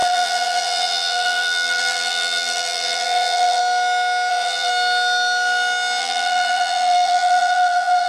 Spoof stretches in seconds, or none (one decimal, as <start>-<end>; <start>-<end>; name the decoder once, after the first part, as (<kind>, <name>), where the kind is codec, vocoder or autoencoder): 0.0-3.6 (vocoder, BigVGAN v2); 4.3-4.7; 6.0-8.1